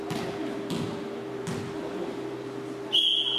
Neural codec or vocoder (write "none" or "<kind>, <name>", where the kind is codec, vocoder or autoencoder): none